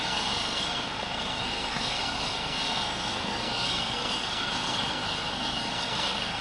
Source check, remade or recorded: remade